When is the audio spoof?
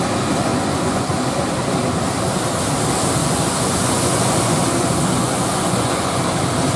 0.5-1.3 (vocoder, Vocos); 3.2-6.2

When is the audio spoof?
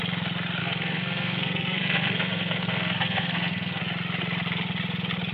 0.6-3.8 (codec, SNAC)